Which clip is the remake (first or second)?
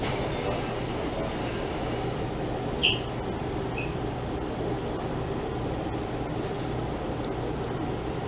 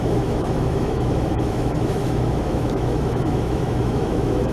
second